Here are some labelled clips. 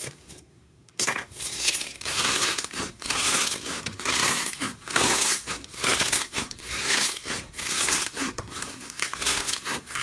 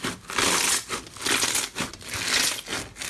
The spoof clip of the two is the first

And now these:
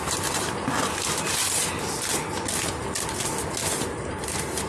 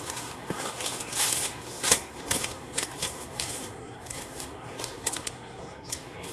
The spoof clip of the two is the second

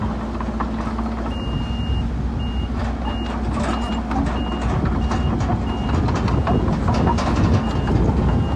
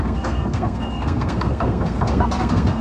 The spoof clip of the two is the second